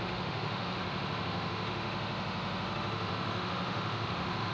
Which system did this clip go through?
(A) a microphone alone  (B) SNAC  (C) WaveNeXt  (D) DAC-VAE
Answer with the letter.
D